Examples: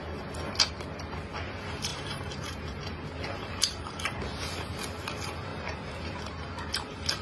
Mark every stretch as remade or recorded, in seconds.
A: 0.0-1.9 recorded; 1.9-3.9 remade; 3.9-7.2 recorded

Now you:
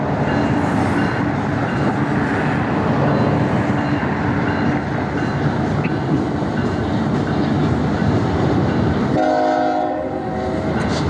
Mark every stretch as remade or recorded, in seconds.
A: 0.0-8.0 recorded; 8.0-9.3 remade; 9.3-11.1 recorded

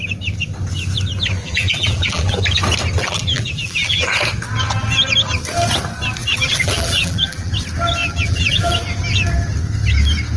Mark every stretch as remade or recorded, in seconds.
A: 0.0-1.4 recorded; 1.4-2.4 remade; 2.4-3.0 recorded; 3.0-4.1 remade; 4.1-6.2 recorded; 6.2-7.5 remade; 7.5-8.0 recorded; 8.0-8.8 remade; 8.8-10.4 recorded

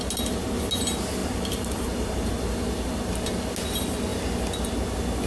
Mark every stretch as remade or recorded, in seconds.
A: 0.0-1.2 recorded; 1.2-2.3 remade; 2.3-5.3 recorded

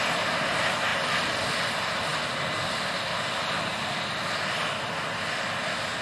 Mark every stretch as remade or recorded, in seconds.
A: 0.0-6.0 recorded